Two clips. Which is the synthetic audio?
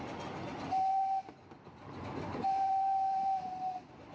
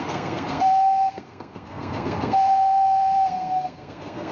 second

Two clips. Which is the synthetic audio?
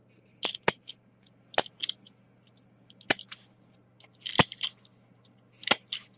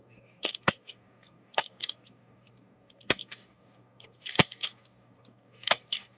second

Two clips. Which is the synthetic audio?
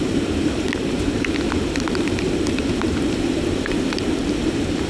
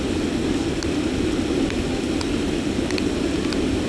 first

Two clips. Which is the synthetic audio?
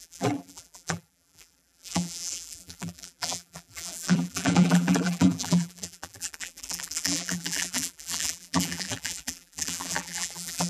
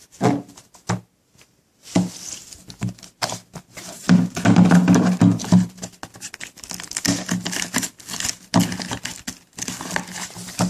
first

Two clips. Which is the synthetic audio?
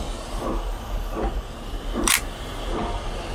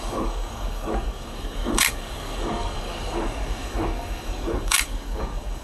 second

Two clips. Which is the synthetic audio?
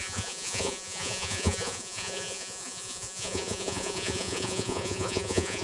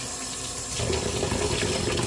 first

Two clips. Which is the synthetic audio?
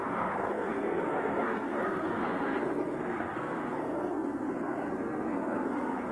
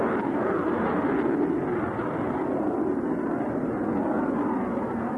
first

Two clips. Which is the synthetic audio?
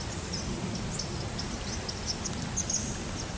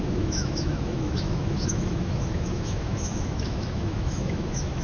second